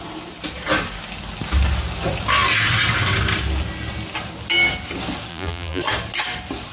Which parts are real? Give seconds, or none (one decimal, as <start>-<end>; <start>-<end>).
0.0-5.3; 5.8-6.7